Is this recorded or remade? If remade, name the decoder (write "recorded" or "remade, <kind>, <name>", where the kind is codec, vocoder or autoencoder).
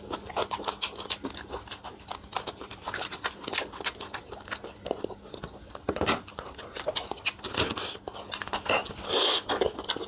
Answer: recorded